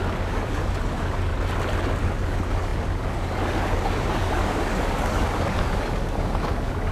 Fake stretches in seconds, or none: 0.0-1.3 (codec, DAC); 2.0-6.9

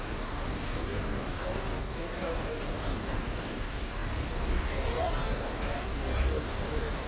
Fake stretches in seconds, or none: 0.0-7.1 (codec, DAC)

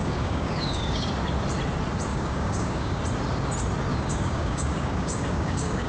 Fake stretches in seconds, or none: 0.0-1.1 (codec, DAC); 2.1-3.0; 3.9-5.9

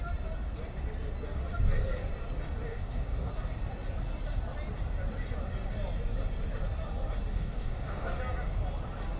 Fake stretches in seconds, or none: 2.7-3.3 (codec, DAC); 7.3-8.2